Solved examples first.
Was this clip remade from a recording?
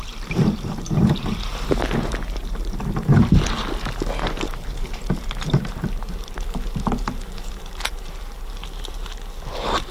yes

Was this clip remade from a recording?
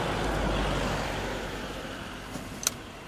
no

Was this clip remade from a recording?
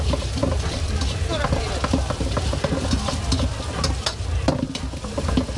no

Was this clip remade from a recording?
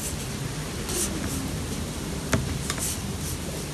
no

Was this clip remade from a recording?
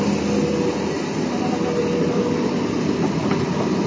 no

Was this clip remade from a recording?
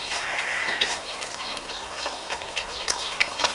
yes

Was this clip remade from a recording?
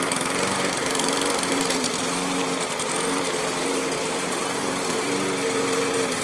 yes